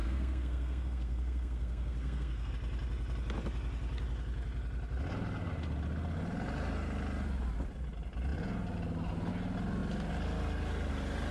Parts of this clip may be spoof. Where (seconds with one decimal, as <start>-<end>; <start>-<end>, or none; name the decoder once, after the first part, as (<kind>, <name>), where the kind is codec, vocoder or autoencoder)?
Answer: 0.0-2.5 (codec, SNAC)